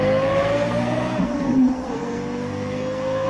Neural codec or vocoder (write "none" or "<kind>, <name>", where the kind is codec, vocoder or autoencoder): codec, SNAC